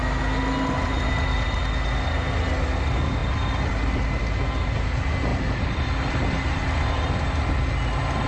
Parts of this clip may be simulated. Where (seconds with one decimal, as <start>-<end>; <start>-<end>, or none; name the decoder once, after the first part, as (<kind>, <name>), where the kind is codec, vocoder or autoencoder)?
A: 5.3-7.7 (vocoder, BigVGAN v2)